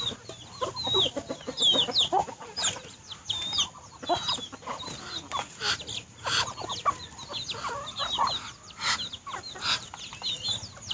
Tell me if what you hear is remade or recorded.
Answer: recorded